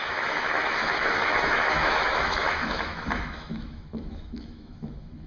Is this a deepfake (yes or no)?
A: yes